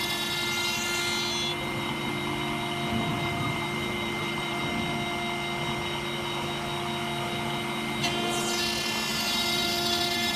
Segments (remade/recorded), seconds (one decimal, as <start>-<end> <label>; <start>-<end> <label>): 0.0-1.5 recorded; 1.5-2.1 remade; 2.1-3.1 recorded; 3.1-4.6 remade; 4.6-9.1 recorded; 9.1-10.4 remade